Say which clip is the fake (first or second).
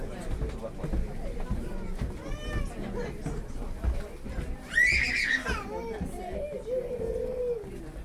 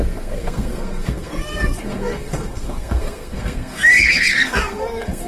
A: second